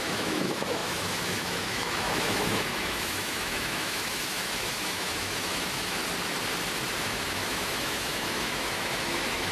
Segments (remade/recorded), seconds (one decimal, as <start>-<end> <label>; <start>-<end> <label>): 0.0-6.0 remade; 6.0-7.0 recorded; 7.0-9.5 remade